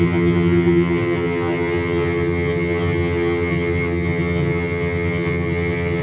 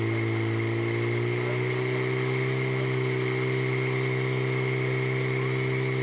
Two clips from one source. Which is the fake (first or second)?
first